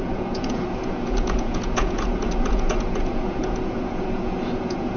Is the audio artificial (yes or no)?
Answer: yes